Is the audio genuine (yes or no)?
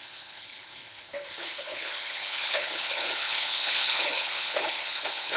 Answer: no